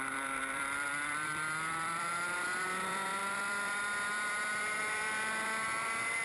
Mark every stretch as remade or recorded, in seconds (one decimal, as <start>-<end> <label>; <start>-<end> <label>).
0.0-6.2 remade